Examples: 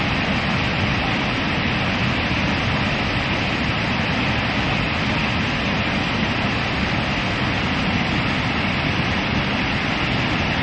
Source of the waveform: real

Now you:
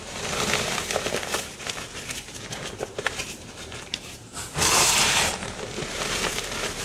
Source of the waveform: fake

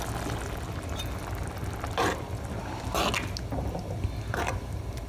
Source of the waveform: real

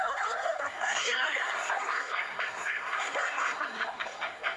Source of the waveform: fake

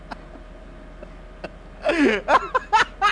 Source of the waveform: real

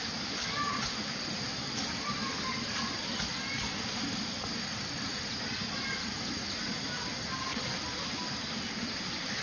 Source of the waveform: real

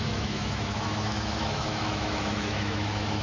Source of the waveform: fake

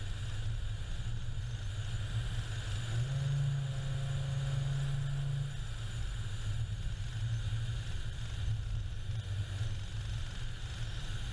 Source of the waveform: real